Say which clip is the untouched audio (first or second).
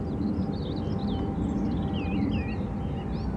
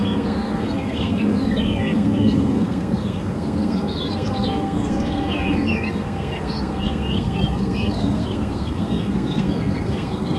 first